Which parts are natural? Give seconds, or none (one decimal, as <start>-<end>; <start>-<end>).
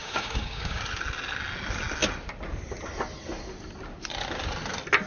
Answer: 0.8-5.1